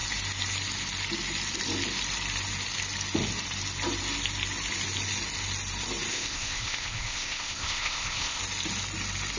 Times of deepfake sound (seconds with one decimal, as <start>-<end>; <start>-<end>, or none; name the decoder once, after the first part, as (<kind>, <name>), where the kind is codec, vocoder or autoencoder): 6.1-8.4 (codec, ZipCodec)

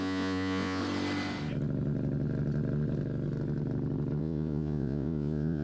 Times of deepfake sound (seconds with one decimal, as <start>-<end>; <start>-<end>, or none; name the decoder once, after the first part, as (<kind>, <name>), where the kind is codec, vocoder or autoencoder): 0.0-0.8 (vocoder, Vocos); 4.2-5.6

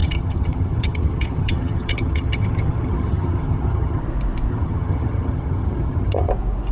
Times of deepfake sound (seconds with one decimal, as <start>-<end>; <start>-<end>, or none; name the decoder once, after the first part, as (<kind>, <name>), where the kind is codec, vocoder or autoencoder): 0.0-4.0 (vocoder, HiFi-GAN); 4.5-6.3

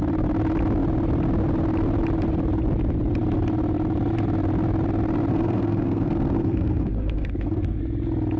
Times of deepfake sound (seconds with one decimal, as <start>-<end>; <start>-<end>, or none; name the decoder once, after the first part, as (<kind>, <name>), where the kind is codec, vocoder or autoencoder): 5.3-7.8 (codec, SNAC)

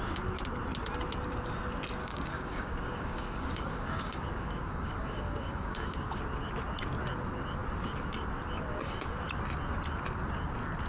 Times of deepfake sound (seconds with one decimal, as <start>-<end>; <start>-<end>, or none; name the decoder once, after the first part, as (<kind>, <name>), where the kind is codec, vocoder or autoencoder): 2.0-6.2 (codec, DAC)

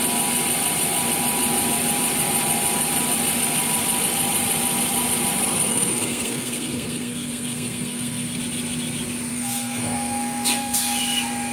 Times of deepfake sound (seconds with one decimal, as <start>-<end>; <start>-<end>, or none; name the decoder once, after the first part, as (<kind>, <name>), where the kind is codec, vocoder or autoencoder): 5.7-8.4 (codec, SNAC); 9.3-11.0